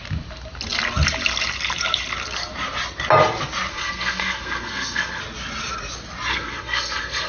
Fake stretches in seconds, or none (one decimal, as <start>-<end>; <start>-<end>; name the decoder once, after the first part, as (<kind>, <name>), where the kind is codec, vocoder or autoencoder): 3.7-5.2 (codec, SNAC); 6.3-7.3